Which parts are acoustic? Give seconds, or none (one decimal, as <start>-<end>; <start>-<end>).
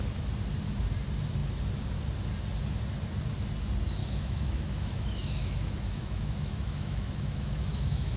0.0-4.0